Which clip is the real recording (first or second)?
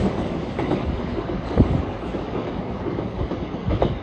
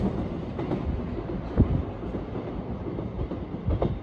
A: second